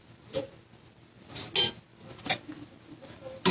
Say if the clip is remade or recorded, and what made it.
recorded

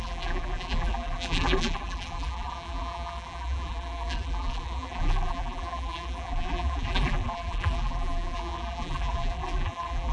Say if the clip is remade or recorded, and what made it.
remade, vocoder, BigVGAN v2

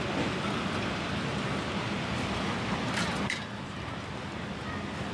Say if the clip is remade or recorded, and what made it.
recorded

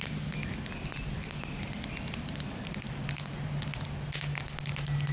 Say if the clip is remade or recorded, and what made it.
recorded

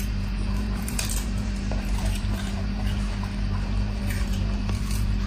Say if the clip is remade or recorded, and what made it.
remade, vocoder, BigVGAN v2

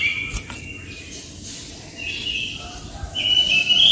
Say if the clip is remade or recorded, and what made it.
recorded